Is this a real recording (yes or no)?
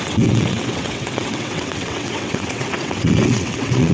no